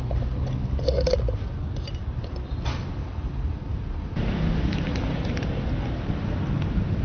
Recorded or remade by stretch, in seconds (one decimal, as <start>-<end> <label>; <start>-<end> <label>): 0.0-3.0 recorded; 3.0-3.8 remade; 3.8-4.7 recorded; 4.7-5.3 remade; 5.3-7.0 recorded